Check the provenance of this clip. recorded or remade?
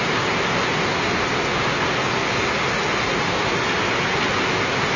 recorded